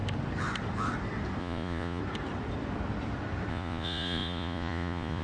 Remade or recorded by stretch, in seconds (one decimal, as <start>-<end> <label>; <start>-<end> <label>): 0.0-1.4 recorded; 1.4-2.0 remade; 2.0-3.5 recorded; 3.5-5.2 remade